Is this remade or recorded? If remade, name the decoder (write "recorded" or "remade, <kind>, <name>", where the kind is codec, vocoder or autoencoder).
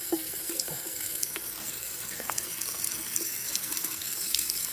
remade, codec, SNAC